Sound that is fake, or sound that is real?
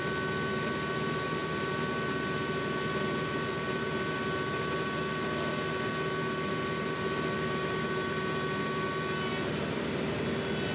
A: real